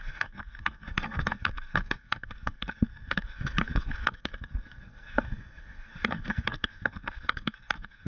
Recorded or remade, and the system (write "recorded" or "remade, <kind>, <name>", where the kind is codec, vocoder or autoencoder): remade, codec, SNAC